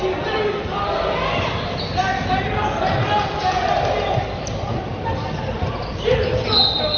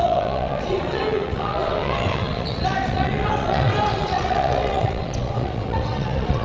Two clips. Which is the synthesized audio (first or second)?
second